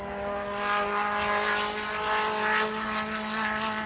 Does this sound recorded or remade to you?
recorded